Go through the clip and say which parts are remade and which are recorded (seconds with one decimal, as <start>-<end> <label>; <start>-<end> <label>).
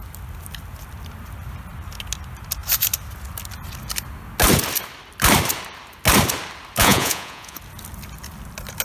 0.0-6.8 recorded; 6.8-7.6 remade; 7.6-8.8 recorded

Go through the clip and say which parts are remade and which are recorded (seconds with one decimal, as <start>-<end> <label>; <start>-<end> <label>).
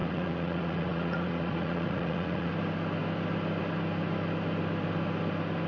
0.0-2.5 remade; 2.5-5.7 recorded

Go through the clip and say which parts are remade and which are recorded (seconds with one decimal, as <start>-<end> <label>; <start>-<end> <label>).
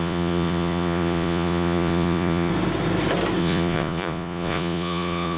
0.0-2.5 remade; 2.5-3.4 recorded; 3.4-5.4 remade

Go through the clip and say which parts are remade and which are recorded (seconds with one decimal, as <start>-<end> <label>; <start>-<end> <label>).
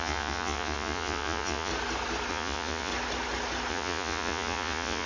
0.0-1.7 remade; 1.7-2.3 recorded; 2.3-2.9 remade; 2.9-3.7 recorded; 3.7-5.1 remade